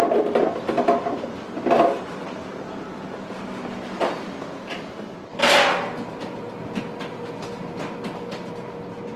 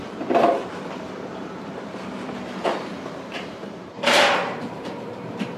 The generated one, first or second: second